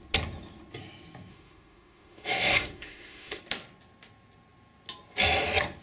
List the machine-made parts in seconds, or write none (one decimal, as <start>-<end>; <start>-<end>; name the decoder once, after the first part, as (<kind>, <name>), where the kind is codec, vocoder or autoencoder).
1.3-3.4 (autoencoder, DAC-VAE)